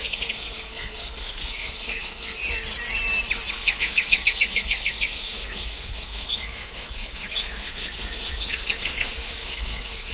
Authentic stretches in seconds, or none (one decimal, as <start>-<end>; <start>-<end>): 2.4-3.5